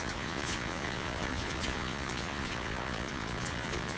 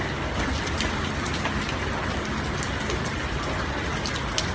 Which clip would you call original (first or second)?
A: second